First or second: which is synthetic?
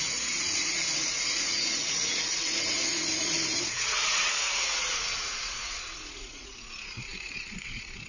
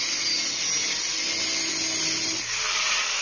first